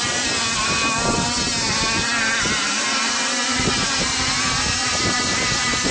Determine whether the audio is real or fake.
real